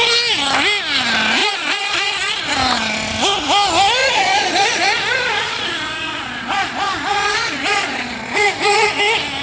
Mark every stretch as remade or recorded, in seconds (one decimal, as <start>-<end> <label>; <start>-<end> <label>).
0.0-1.4 recorded; 1.4-2.5 remade; 2.5-4.0 recorded; 4.0-9.0 remade; 9.0-9.4 recorded